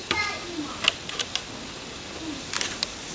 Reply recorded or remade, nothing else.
recorded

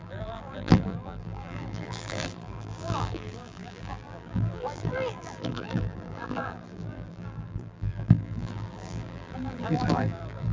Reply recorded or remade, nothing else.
remade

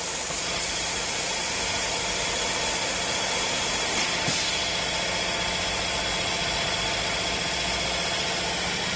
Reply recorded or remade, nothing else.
recorded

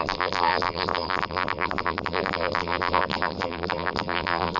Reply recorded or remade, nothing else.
remade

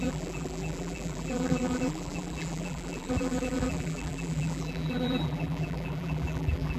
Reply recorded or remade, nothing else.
remade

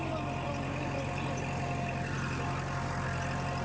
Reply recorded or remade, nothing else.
recorded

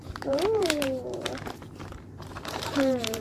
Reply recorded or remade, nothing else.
remade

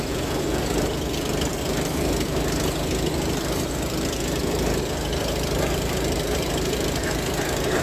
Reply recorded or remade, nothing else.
remade